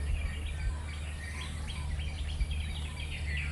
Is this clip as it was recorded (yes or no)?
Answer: yes